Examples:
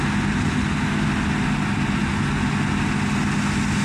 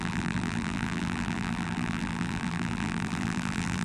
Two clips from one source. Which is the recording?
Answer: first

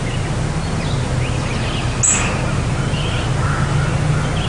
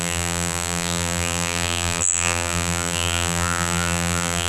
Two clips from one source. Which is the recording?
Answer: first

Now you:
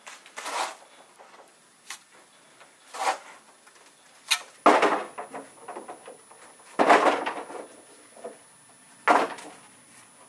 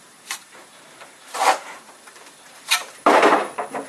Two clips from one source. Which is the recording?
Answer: first